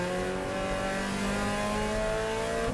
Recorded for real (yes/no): yes